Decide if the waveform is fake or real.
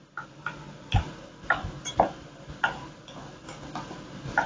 real